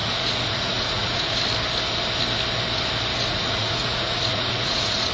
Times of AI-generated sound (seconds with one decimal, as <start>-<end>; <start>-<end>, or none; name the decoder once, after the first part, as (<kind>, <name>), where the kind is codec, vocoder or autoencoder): 0.0-1.4 (vocoder, Vocos); 3.3-5.1